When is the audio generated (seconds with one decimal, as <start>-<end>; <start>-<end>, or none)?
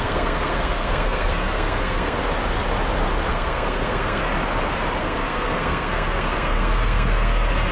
0.0-2.2; 3.3-4.2; 5.0-7.7